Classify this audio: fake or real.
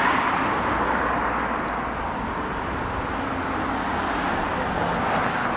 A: real